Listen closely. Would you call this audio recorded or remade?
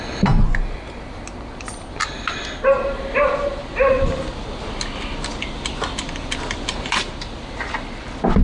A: recorded